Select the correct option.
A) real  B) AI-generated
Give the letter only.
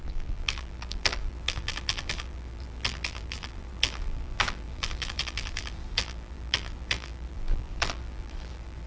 B